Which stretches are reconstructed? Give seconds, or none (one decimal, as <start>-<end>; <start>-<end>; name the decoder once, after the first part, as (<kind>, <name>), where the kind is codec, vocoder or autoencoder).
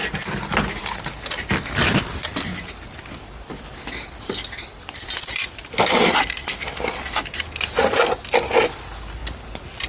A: none